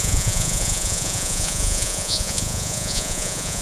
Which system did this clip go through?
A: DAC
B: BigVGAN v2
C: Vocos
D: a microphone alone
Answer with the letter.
C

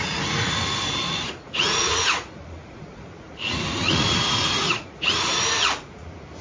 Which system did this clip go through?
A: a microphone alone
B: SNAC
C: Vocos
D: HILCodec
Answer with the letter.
C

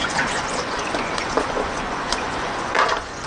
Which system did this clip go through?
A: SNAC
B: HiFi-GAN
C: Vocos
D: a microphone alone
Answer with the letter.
C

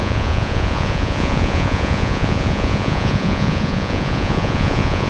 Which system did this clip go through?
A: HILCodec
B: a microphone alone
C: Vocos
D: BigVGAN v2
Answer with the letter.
C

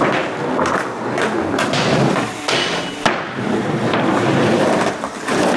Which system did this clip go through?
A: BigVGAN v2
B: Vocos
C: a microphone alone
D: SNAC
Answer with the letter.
C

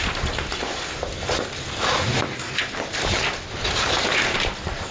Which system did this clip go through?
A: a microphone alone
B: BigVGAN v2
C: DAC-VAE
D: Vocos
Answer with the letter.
A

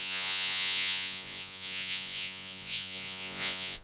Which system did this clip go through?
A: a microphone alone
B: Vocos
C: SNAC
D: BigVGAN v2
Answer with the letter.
B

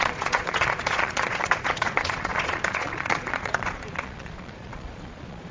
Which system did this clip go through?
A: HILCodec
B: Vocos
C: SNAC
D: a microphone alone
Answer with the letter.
B